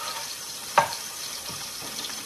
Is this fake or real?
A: fake